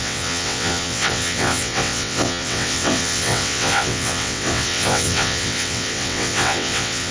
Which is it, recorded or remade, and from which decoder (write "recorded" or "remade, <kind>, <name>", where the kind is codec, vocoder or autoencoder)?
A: remade, vocoder, WaveNeXt